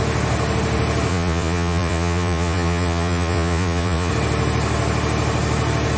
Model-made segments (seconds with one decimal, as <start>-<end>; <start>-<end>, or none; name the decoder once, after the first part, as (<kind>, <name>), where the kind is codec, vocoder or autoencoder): 1.1-4.1 (vocoder, Vocos)